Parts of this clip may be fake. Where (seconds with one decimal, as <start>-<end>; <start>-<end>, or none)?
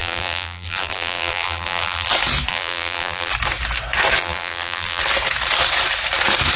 0.0-2.1; 2.5-3.3; 4.2-5.0